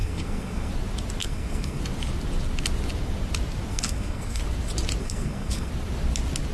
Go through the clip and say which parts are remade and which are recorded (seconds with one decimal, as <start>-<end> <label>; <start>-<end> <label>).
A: 0.0-0.7 remade; 0.7-1.2 recorded; 1.2-1.8 remade; 1.8-3.7 recorded; 3.7-4.4 remade; 4.4-5.0 recorded; 5.0-5.7 remade; 5.7-6.5 recorded